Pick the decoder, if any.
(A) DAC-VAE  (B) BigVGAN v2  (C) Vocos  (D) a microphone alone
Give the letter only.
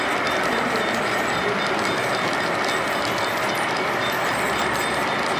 D